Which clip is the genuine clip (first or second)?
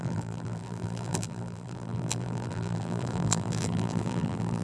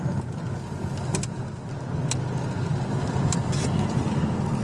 second